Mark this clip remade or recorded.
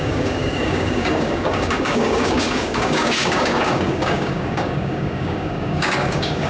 remade